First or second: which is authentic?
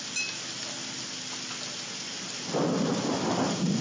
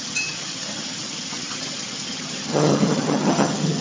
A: first